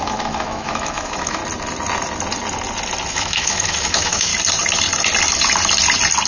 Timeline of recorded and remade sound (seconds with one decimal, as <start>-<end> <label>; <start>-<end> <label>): 0.0-1.4 remade; 1.4-3.1 recorded; 3.1-4.3 remade; 4.3-6.3 recorded